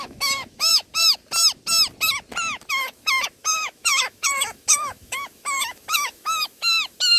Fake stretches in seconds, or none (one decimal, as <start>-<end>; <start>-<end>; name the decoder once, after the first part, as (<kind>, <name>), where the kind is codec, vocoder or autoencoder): 0.0-1.2 (autoencoder, DAC-VAE); 2.7-7.2